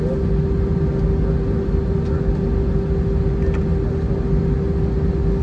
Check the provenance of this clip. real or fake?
real